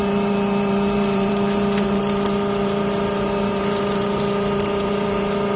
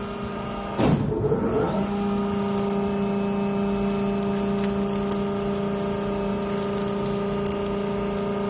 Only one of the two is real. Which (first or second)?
second